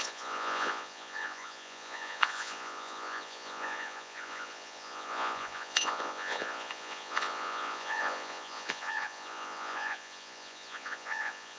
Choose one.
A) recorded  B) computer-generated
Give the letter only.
B